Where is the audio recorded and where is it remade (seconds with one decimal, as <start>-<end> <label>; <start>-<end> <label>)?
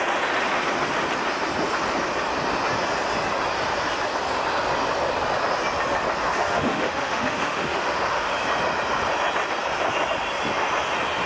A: 0.0-6.2 recorded; 6.2-8.3 remade; 8.3-11.3 recorded